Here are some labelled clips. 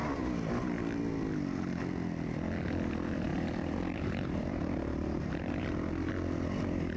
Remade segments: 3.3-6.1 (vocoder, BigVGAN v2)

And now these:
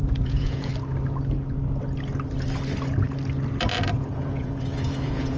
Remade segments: 0.0-0.7 (vocoder, Vocos); 3.9-5.4

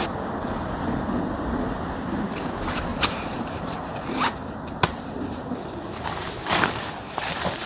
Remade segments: 0.4-1.0 (vocoder, BigVGAN v2); 2.9-7.7

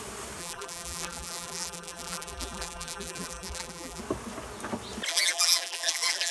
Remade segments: 0.4-4.0 (vocoder, BigVGAN v2); 5.1-6.3

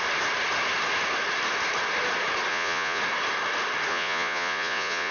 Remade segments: 2.5-3.0 (vocoder, Vocos); 3.9-5.1